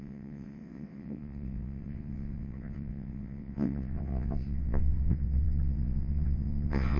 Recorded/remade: remade